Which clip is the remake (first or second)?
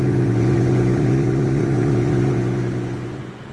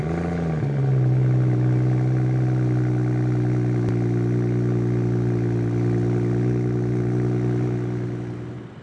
first